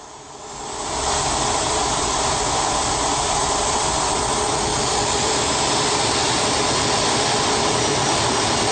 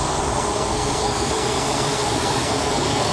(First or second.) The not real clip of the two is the second